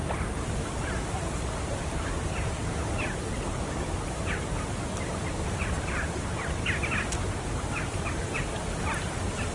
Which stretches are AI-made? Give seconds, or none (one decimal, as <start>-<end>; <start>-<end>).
none